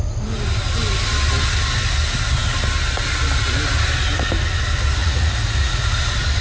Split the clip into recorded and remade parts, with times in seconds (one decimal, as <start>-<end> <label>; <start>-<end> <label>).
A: 0.0-5.0 recorded; 5.0-6.0 remade; 6.0-6.4 recorded